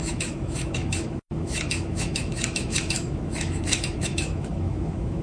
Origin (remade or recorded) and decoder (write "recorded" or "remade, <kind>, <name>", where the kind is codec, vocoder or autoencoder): remade, autoencoder, DAC-VAE